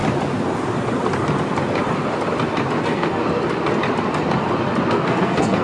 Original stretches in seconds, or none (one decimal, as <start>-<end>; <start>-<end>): 0.0-2.8; 3.2-4.9